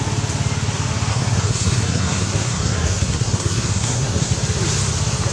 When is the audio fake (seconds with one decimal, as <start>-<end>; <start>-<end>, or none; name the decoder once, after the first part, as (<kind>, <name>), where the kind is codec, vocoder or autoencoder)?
1.1-4.3 (codec, SNAC)